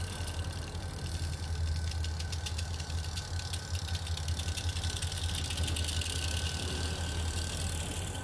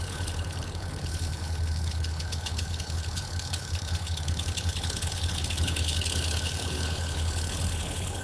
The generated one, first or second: second